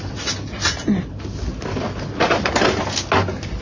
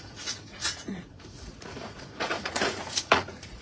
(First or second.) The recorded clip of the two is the first